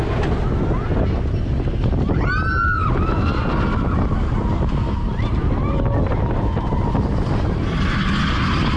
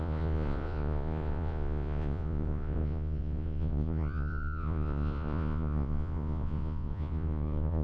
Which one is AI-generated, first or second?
second